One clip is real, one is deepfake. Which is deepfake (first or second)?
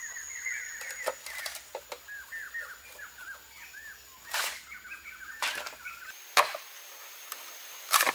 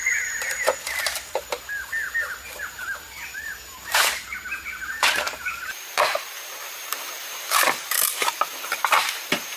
second